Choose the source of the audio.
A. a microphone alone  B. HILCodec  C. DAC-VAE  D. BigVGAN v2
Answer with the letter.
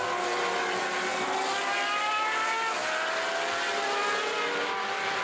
A